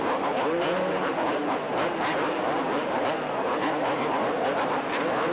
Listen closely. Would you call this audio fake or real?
fake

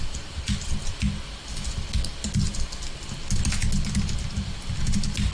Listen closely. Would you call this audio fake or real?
real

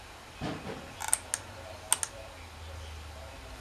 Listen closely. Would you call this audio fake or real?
real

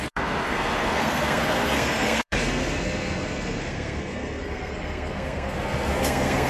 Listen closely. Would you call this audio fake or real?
fake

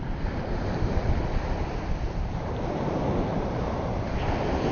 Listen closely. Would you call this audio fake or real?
fake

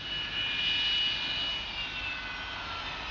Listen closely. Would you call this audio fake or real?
real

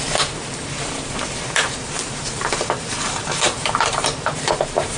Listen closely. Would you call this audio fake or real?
fake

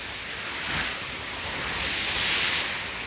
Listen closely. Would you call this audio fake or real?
real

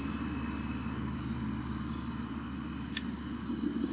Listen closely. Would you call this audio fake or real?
real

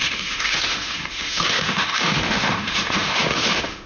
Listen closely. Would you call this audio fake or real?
fake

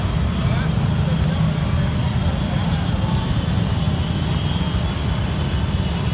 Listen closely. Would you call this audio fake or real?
real